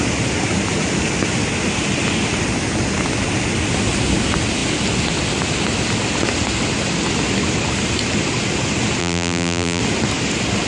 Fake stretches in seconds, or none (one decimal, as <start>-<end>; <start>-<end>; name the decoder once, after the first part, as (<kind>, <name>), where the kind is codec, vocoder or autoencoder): 9.0-9.8 (vocoder, BigVGAN v2)